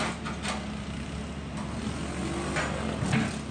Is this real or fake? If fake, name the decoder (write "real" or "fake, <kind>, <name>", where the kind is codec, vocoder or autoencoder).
real